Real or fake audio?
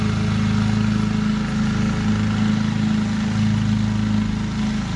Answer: real